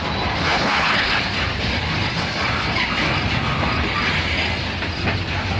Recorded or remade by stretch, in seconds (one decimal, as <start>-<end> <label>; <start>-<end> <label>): 0.0-0.4 recorded; 0.4-1.2 remade; 1.2-5.6 recorded